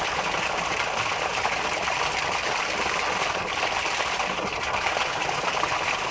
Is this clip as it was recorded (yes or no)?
yes